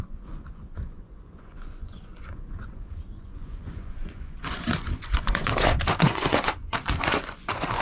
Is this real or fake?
fake